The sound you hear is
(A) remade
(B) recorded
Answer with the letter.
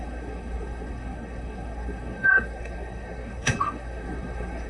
A